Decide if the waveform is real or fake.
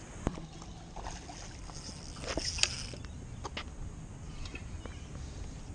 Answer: real